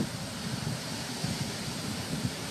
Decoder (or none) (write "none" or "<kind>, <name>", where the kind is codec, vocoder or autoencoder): vocoder, BigVGAN v2